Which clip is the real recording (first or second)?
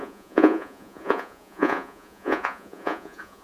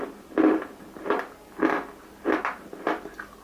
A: second